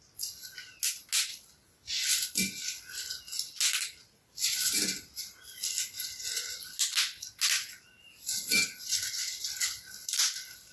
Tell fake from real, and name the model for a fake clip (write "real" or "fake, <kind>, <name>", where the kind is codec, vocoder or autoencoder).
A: real